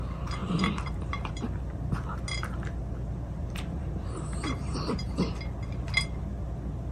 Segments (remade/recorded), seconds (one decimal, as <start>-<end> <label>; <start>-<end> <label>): 0.0-0.4 recorded; 0.4-1.3 remade; 1.3-3.4 recorded; 3.4-5.2 remade; 5.2-6.9 recorded